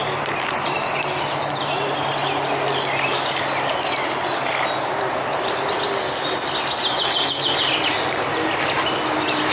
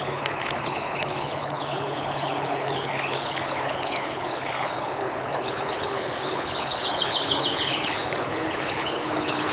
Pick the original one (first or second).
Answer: first